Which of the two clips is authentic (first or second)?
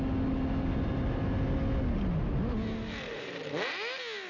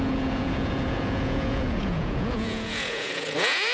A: first